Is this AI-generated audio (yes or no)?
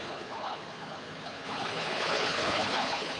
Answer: yes